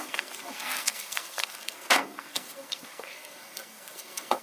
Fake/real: fake